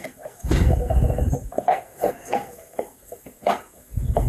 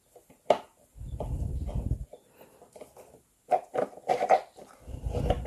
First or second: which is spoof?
first